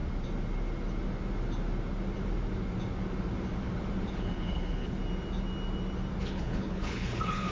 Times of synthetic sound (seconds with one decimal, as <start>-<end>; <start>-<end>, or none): 4.1-5.0; 6.2-7.5